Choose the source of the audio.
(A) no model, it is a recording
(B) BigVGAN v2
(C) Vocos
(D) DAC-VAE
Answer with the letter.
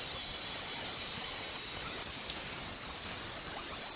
A